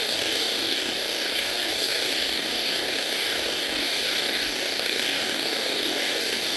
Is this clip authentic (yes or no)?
no